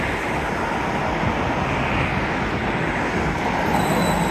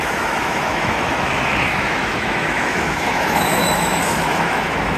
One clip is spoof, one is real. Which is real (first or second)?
first